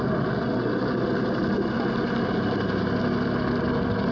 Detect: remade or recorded recorded